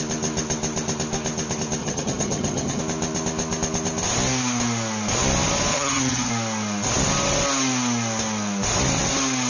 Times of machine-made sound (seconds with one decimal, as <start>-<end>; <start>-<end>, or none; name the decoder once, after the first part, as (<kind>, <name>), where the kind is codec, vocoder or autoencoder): 1.8-2.8 (vocoder, HiFi-GAN); 5.7-6.3